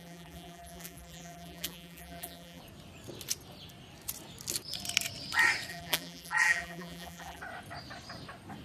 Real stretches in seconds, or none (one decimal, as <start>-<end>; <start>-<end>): 2.6-5.7; 7.4-8.6